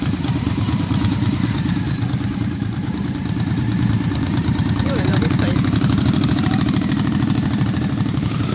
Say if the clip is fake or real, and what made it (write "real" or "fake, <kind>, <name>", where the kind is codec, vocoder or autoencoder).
fake, vocoder, BigVGAN v2